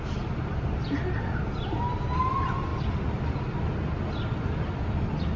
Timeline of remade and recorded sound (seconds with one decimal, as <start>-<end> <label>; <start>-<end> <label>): 0.0-5.4 recorded